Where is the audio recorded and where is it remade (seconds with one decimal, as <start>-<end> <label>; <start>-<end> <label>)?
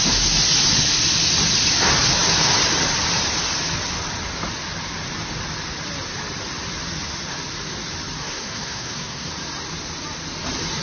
0.0-8.2 recorded; 8.2-9.3 remade; 9.3-10.8 recorded